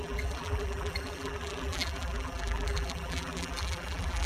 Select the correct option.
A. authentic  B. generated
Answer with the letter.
B